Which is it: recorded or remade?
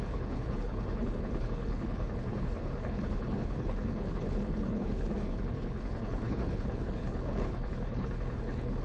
remade